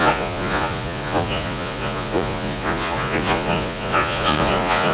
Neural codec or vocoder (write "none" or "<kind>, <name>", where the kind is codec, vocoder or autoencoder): vocoder, Vocos